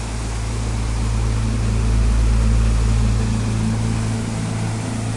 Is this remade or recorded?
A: recorded